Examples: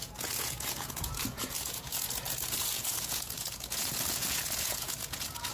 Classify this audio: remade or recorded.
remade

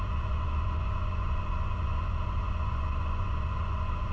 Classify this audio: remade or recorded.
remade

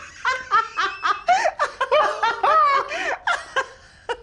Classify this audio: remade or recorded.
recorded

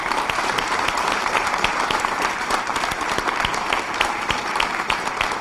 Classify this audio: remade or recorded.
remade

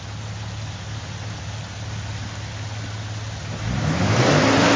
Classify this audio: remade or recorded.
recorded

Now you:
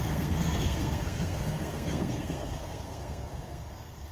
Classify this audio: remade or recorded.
remade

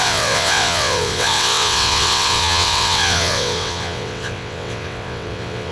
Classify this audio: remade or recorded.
remade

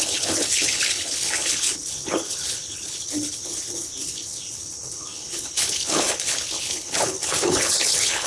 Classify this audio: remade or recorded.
remade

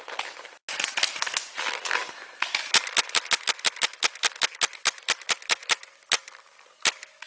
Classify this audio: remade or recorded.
recorded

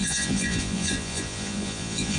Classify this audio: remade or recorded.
remade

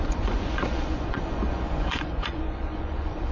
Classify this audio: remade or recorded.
remade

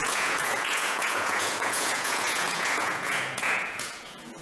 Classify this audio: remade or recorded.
remade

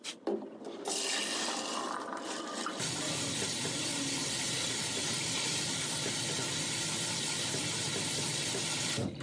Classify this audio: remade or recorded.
recorded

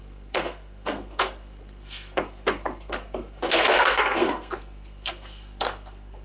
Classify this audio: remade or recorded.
remade